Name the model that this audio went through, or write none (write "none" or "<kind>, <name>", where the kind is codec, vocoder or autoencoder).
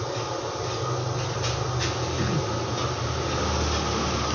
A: none